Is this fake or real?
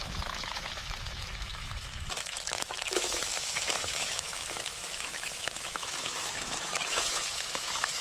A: fake